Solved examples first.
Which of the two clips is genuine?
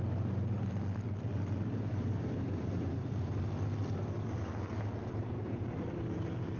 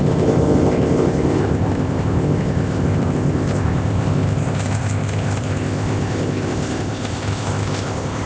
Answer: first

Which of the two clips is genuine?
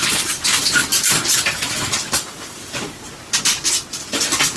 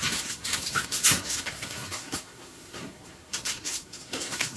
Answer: first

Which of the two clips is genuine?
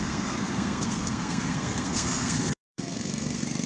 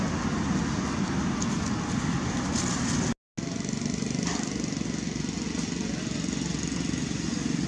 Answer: second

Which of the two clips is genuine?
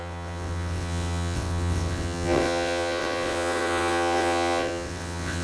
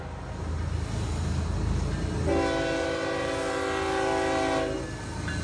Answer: second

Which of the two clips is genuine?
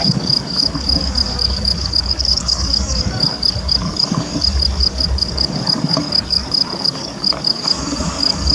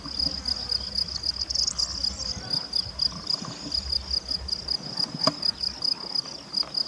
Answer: second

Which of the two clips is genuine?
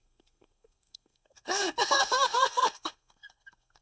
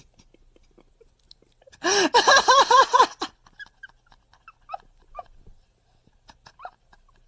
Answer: second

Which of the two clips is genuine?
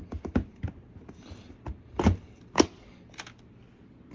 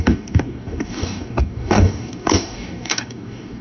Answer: first